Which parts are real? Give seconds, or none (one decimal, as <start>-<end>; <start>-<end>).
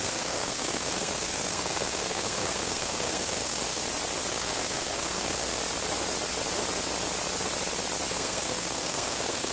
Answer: 3.8-4.3; 5.6-8.1